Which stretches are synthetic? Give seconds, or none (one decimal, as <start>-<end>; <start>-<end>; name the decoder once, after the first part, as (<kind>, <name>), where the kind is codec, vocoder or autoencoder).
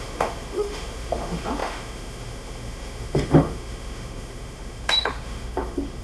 0.0-6.0 (autoencoder, DAC-VAE)